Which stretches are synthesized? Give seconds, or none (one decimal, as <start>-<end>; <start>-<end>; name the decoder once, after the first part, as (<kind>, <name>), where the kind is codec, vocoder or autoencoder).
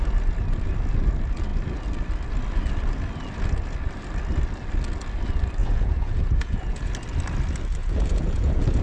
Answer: 5.6-6.9 (vocoder, Vocos); 7.8-8.8